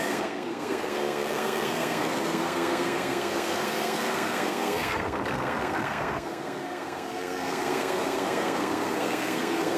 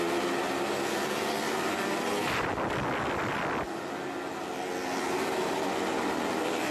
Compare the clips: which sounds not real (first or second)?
first